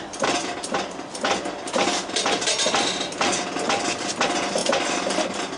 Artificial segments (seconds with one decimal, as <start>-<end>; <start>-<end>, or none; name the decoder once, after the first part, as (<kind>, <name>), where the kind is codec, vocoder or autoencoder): none